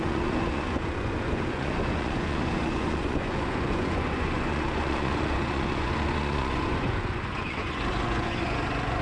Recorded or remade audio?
remade